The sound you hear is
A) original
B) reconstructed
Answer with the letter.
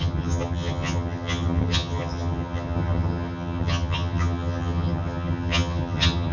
B